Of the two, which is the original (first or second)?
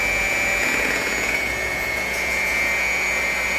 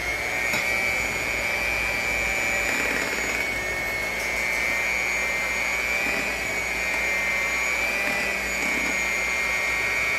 second